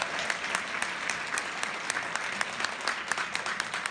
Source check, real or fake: real